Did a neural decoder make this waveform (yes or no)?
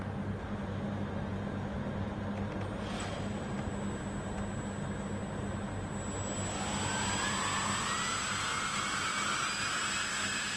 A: no